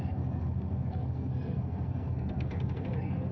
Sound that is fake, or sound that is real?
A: fake